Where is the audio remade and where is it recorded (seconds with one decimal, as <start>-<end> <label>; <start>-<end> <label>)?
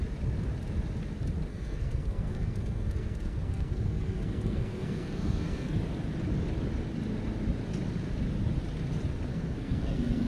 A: 0.0-1.5 recorded; 1.5-5.8 remade; 5.8-9.3 recorded; 9.3-10.3 remade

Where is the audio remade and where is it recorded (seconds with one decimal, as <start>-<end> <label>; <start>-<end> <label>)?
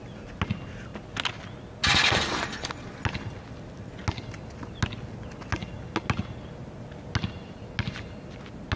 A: 0.0-8.8 recorded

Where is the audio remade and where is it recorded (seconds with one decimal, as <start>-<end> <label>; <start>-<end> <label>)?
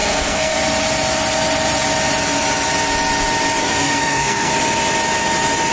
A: 0.0-0.6 remade; 0.6-3.6 recorded; 3.6-4.5 remade; 4.5-5.7 recorded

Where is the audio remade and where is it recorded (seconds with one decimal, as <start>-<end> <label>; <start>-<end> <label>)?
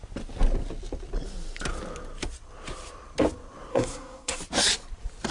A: 0.0-3.7 recorded; 3.7-4.4 remade; 4.4-5.3 recorded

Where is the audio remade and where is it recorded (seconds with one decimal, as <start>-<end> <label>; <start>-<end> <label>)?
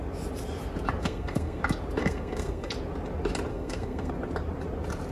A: 0.0-1.0 recorded; 1.0-1.6 remade; 1.6-2.0 recorded; 2.0-2.7 remade; 2.7-3.5 recorded; 3.5-4.1 remade; 4.1-5.1 recorded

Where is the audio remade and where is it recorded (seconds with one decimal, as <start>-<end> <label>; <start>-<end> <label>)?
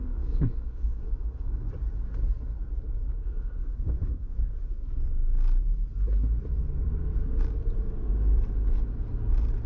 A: 0.0-1.7 remade; 1.7-3.2 recorded; 3.2-4.3 remade; 4.3-9.7 recorded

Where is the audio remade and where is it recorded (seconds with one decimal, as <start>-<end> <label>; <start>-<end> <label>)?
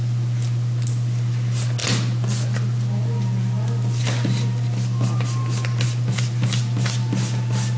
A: 0.0-7.8 recorded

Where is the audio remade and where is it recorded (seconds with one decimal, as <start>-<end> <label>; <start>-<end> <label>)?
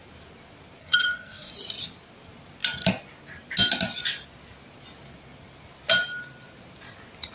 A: 0.0-0.8 recorded; 0.8-1.5 remade; 1.5-7.3 recorded